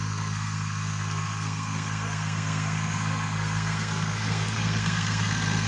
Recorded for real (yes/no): no